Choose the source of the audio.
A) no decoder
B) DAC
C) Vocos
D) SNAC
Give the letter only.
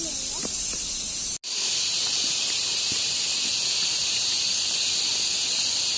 A